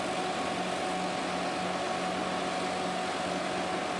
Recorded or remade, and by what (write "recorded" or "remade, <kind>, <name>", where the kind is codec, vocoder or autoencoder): recorded